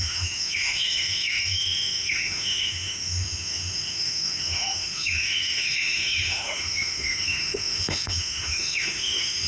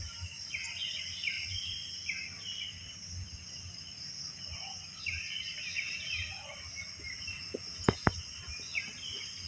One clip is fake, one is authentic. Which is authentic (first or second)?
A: second